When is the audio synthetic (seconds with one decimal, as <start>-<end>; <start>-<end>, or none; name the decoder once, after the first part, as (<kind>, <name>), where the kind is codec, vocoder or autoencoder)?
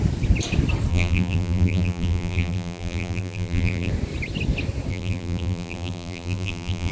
0.9-3.9 (vocoder, BigVGAN v2); 4.9-6.9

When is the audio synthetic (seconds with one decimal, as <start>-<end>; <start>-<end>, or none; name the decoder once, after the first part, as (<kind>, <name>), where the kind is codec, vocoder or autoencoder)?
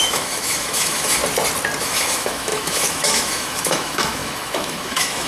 0.0-1.2 (autoencoder, DAC-VAE); 1.8-5.3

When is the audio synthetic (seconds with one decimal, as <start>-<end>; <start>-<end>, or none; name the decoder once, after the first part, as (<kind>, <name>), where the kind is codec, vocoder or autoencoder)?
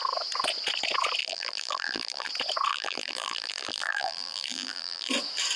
1.2-2.3 (vocoder, BigVGAN v2); 2.7-5.1